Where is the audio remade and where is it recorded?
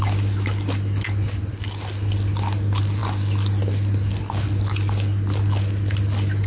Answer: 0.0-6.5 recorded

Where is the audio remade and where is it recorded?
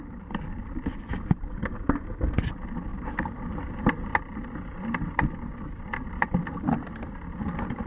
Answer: 0.0-7.9 recorded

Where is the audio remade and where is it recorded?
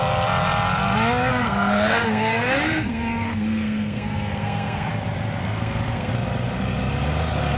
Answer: 0.0-1.3 recorded; 1.3-4.9 remade; 4.9-5.4 recorded; 5.4-6.1 remade; 6.1-7.6 recorded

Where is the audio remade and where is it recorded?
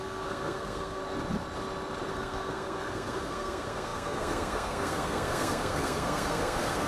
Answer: 0.0-1.0 remade; 1.0-2.1 recorded; 2.1-6.9 remade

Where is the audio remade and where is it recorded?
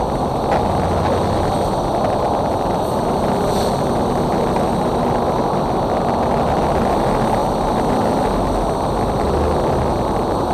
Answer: 0.0-10.5 recorded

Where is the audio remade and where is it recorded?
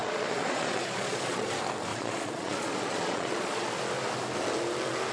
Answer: 0.0-1.5 remade; 1.5-1.9 recorded; 1.9-3.8 remade; 3.8-5.1 recorded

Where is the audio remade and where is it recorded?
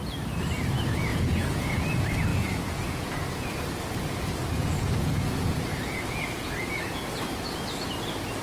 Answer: 0.0-1.1 recorded; 1.1-1.8 remade; 1.8-2.3 recorded; 2.3-3.5 remade; 3.5-4.5 recorded; 4.5-7.1 remade; 7.1-8.4 recorded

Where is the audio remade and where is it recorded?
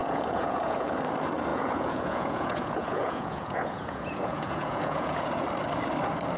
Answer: 0.0-0.9 remade; 0.9-1.5 recorded; 1.5-5.3 remade; 5.3-6.4 recorded